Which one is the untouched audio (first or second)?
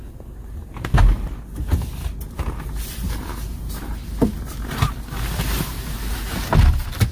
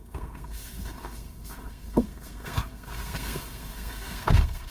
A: first